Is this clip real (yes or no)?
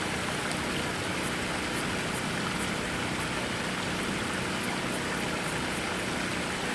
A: yes